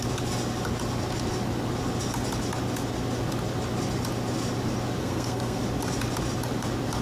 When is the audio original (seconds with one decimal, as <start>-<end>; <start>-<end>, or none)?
0.0-5.0; 5.6-7.0